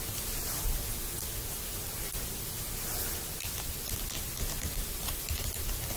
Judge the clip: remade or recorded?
recorded